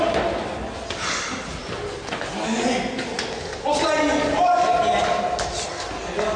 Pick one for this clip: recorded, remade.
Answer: recorded